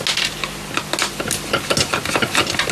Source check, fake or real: real